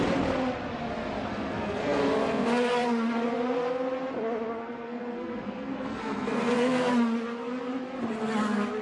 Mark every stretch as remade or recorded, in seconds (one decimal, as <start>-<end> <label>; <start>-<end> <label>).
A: 0.0-1.3 recorded; 1.3-2.0 remade; 2.0-4.6 recorded; 4.6-6.9 remade; 6.9-8.8 recorded